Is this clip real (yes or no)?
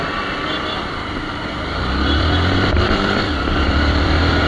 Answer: no